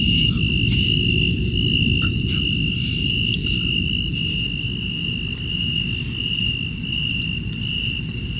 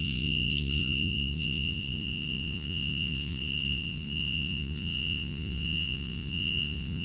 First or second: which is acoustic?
first